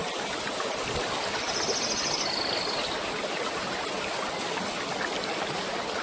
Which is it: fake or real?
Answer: real